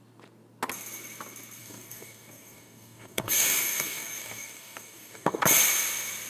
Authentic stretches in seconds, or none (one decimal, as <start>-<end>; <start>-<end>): 0.0-1.6; 5.4-6.3